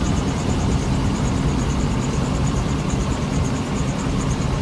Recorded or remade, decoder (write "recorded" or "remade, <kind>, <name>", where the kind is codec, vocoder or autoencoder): recorded